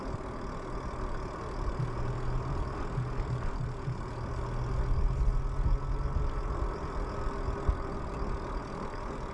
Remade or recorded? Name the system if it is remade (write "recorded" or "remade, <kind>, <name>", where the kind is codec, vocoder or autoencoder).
recorded